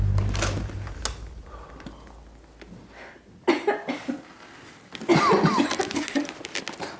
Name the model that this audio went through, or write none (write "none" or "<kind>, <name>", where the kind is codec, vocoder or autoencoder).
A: none